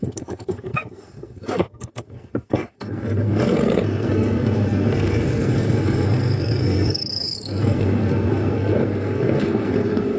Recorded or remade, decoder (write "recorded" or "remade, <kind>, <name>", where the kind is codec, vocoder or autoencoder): remade, codec, SNAC